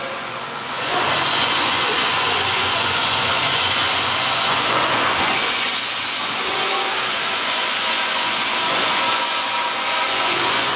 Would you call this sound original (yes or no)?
no